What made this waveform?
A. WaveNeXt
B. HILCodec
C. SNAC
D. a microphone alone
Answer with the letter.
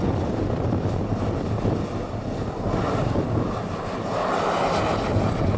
D